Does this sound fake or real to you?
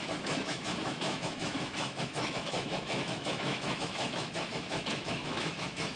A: fake